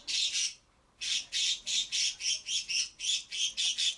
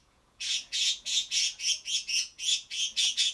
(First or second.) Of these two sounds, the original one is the first